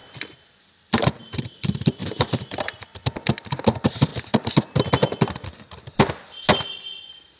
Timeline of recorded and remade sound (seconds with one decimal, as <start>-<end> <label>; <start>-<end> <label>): 0.0-1.2 recorded; 1.2-3.0 remade; 3.0-3.6 recorded; 3.6-4.1 remade; 4.1-7.4 recorded